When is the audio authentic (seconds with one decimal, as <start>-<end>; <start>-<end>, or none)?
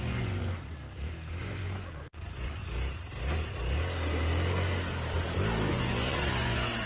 0.8-1.4; 2.6-5.7